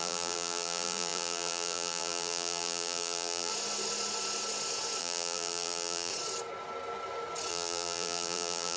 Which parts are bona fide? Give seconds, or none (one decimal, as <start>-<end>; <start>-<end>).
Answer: 3.5-5.0; 6.1-7.5